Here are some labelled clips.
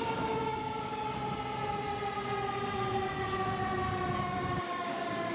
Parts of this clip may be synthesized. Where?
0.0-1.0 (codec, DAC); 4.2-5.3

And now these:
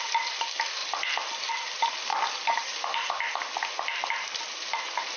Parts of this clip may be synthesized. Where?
2.1-3.1 (codec, DAC)

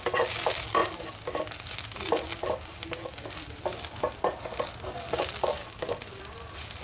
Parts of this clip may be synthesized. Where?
5.6-6.2 (codec, DAC)